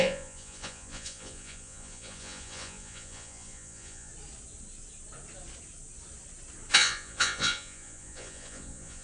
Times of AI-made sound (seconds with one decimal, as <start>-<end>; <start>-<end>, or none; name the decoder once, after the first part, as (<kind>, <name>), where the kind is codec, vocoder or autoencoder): 0.0-4.1 (vocoder, Vocos); 6.7-9.0